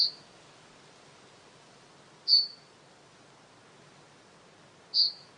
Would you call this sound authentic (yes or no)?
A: yes